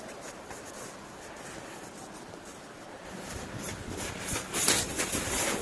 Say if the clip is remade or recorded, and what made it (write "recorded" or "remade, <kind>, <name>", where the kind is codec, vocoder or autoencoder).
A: recorded